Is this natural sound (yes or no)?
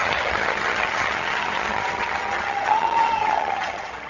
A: no